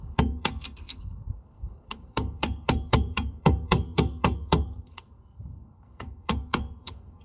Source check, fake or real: fake